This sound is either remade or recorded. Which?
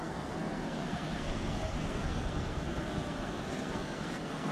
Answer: remade